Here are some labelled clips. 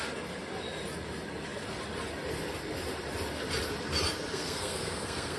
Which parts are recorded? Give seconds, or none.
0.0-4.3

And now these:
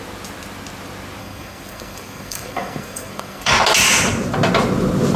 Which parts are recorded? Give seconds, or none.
0.0-1.2; 3.5-5.2

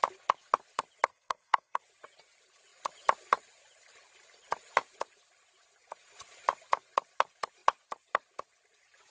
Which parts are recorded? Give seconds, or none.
0.0-1.1; 1.8-9.1

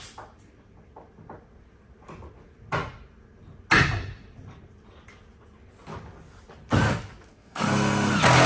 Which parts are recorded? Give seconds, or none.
0.0-7.3; 8.1-8.5

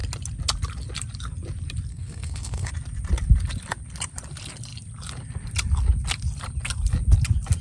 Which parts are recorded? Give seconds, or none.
0.0-1.9; 2.7-7.6

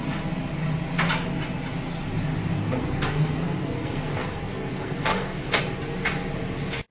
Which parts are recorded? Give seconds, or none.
0.0-2.6; 5.6-6.9

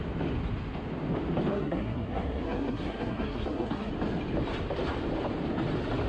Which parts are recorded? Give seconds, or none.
0.0-1.5; 3.9-6.1